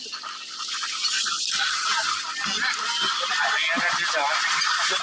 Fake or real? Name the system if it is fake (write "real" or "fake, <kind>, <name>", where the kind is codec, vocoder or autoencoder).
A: real